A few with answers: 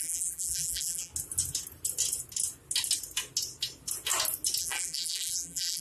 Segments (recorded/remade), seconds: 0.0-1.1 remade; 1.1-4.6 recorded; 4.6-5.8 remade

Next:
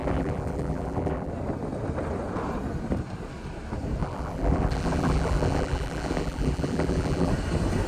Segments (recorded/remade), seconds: 0.0-1.3 remade; 1.3-4.0 recorded; 4.0-7.3 remade; 7.3-7.9 recorded

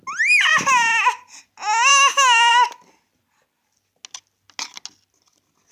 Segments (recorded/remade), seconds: 0.0-1.9 recorded; 1.9-2.5 remade; 2.5-5.7 recorded

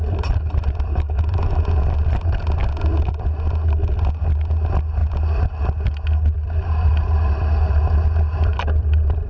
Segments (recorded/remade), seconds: 0.0-0.9 recorded; 0.9-1.6 remade; 1.6-9.3 recorded

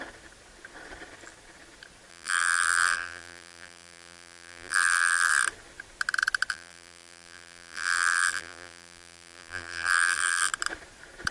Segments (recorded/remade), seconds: 0.0-2.1 recorded; 2.1-5.3 remade; 5.3-6.5 recorded; 6.5-10.5 remade; 10.5-11.3 recorded

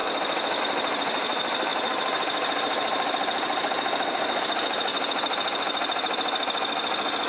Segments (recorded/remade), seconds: 0.0-0.6 recorded; 0.6-4.9 remade; 4.9-7.3 recorded

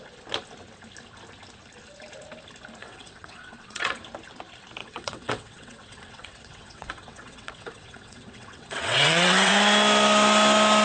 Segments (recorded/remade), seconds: 0.0-2.8 recorded; 2.8-4.0 remade; 4.0-4.8 recorded; 4.8-9.5 remade; 9.5-10.8 recorded

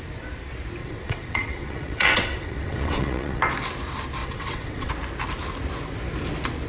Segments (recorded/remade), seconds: 0.0-0.8 recorded; 0.8-3.4 remade; 3.4-4.2 recorded; 4.2-4.9 remade; 4.9-6.7 recorded